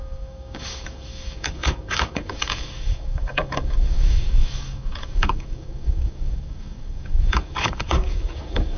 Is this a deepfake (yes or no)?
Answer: yes